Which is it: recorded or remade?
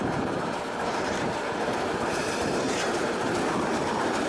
remade